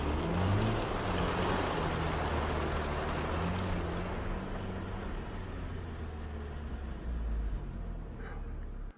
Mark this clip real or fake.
real